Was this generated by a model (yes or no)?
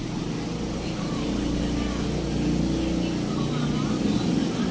no